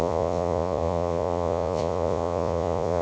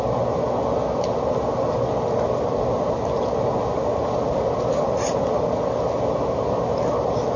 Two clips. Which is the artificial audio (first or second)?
first